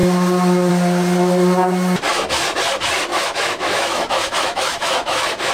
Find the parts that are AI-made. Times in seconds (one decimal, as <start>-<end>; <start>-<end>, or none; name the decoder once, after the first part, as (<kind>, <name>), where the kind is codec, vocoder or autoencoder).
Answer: 3.1-5.5 (autoencoder, DAC-VAE)